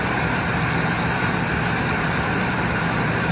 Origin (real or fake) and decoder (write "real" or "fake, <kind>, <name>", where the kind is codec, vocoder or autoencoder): real